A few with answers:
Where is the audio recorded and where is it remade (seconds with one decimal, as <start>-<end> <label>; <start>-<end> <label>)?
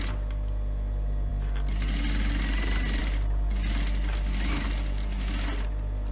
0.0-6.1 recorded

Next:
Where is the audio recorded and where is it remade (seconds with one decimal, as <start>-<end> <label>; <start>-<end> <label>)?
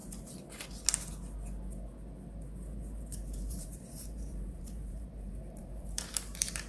0.0-3.1 recorded; 3.1-6.7 remade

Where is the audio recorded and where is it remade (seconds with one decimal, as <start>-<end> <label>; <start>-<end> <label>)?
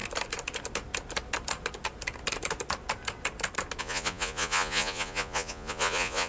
0.0-3.8 recorded; 3.8-6.3 remade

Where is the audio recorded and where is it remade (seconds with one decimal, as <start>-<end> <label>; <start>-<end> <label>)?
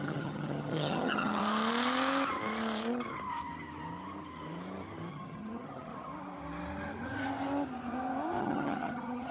0.0-1.4 remade; 1.4-5.1 recorded; 5.1-5.9 remade; 5.9-8.4 recorded; 8.4-9.3 remade